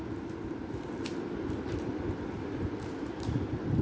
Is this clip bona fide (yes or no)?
yes